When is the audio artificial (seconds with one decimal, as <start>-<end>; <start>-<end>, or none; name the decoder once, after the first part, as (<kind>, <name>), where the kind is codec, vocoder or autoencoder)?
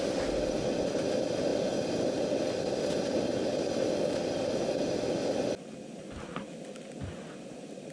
none